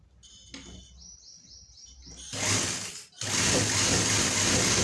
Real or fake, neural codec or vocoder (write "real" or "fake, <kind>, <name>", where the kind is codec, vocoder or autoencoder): real